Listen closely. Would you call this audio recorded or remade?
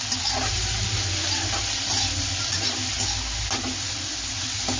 recorded